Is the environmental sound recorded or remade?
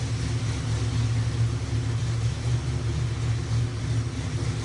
recorded